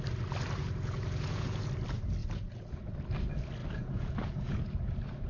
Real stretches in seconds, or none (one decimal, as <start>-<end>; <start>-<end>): 0.0-0.6; 1.7-2.2; 2.9-3.6; 4.7-5.3